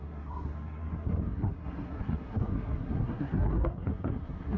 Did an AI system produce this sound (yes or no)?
yes